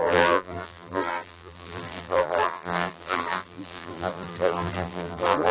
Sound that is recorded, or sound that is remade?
remade